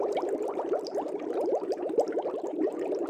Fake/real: fake